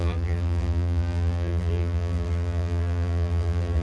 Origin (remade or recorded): remade